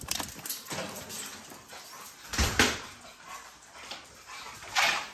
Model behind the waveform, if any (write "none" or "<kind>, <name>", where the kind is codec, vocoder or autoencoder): none